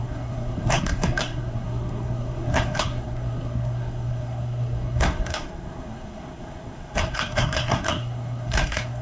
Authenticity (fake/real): fake